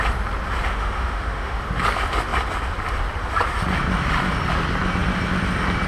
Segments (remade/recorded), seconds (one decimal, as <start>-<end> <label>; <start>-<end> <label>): 0.0-0.7 recorded; 0.7-1.6 remade; 1.6-5.9 recorded

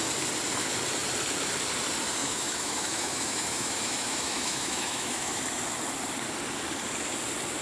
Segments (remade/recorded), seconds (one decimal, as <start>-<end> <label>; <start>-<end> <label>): 0.0-2.2 recorded; 2.2-5.4 remade; 5.4-7.6 recorded

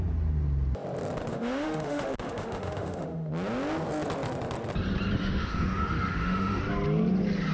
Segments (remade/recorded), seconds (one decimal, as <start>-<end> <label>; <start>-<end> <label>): 0.0-1.3 recorded; 1.3-3.3 remade; 3.3-5.2 recorded; 5.2-6.6 remade; 6.6-7.5 recorded

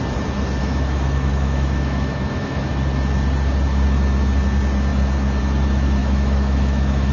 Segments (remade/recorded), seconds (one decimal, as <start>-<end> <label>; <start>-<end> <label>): 0.0-0.6 recorded; 0.6-2.7 remade; 2.7-6.0 recorded; 6.0-7.1 remade

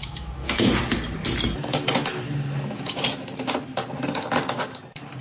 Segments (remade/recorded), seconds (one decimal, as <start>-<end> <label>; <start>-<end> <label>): 0.0-0.8 remade; 0.8-5.2 recorded